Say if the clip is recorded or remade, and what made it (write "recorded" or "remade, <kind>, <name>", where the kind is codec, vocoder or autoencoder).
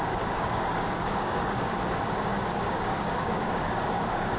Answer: remade, codec, DAC